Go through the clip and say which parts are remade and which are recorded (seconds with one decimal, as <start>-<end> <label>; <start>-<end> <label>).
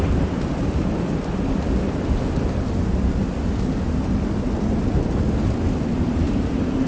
0.0-5.9 recorded; 5.9-6.5 remade; 6.5-6.9 recorded